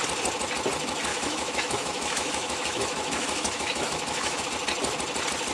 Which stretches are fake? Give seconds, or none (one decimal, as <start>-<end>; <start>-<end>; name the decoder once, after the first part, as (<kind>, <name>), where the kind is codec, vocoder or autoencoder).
1.1-4.4 (autoencoder, DAC-VAE)